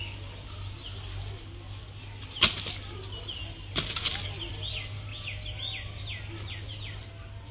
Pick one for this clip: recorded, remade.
recorded